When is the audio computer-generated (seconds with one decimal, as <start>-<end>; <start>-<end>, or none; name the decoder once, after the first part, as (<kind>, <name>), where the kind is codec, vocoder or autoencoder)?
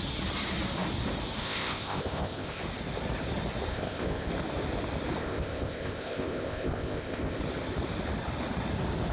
1.4-2.6 (codec, ZipCodec); 3.7-4.3; 5.2-7.4